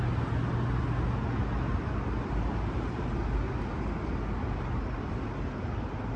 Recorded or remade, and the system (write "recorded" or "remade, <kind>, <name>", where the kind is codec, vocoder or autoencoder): recorded